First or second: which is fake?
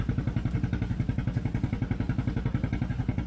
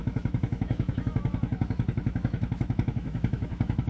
second